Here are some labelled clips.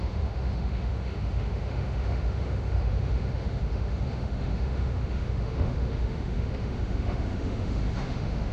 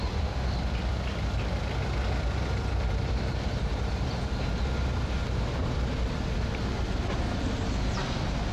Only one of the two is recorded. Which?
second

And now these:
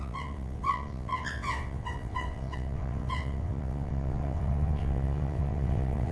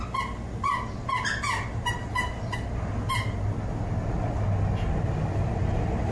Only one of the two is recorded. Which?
second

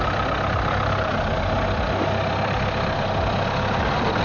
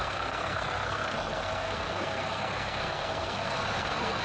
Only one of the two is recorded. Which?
first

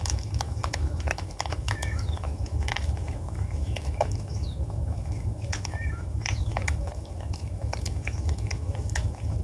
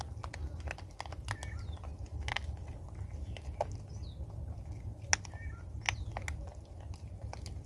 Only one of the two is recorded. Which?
second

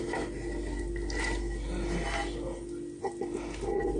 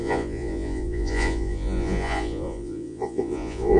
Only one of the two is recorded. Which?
first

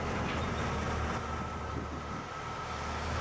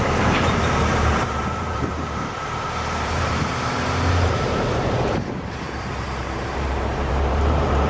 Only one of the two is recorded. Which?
first